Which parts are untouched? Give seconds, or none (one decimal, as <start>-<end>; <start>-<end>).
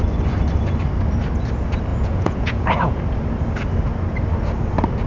0.0-1.9; 3.0-5.1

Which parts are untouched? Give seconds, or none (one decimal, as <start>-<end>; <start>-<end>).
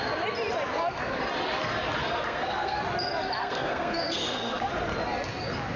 0.0-2.0; 2.8-3.4; 4.7-5.8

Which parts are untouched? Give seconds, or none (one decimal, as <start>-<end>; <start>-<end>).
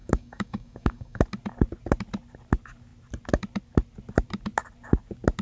1.2-5.4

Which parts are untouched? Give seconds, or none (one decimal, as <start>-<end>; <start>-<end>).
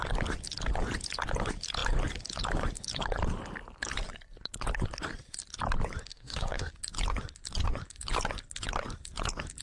0.0-6.1; 6.7-9.6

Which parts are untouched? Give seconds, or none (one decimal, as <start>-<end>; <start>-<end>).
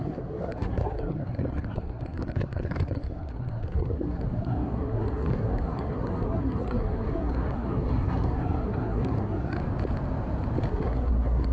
9.6-10.7